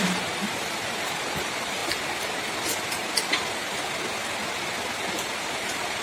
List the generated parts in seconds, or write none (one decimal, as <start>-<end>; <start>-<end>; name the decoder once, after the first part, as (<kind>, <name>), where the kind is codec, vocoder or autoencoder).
0.0-1.8 (vocoder, BigVGAN v2); 5.4-6.0